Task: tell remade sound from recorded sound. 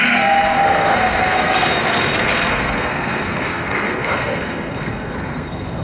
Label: remade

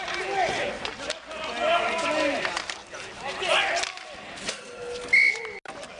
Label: recorded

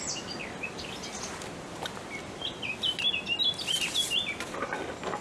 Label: recorded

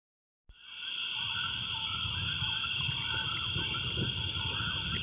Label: recorded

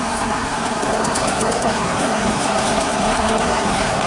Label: remade